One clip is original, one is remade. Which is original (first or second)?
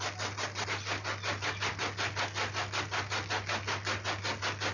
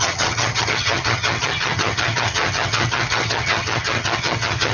first